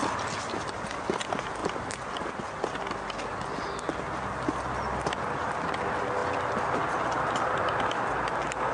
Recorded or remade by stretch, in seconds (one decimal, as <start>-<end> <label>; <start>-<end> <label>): 0.0-8.7 recorded